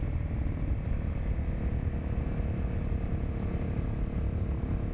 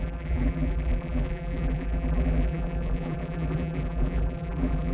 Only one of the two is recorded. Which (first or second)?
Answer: first